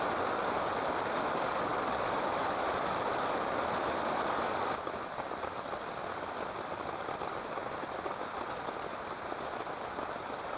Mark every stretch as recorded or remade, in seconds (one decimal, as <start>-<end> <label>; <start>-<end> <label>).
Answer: 0.0-10.6 recorded